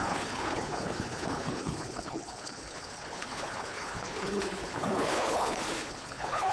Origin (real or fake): fake